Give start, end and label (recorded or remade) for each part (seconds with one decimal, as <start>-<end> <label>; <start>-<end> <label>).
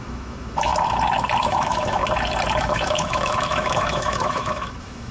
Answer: 0.0-0.7 remade; 0.7-1.4 recorded; 1.4-2.0 remade; 2.0-2.6 recorded; 2.6-5.1 remade